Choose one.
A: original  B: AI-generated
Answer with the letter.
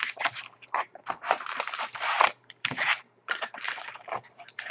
B